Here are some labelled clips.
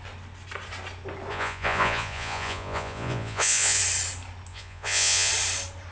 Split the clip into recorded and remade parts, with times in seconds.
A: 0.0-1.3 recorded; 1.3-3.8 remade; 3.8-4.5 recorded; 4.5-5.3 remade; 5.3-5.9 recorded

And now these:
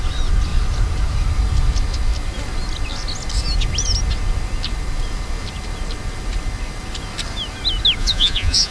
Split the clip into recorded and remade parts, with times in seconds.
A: 0.0-8.0 recorded; 8.0-8.7 remade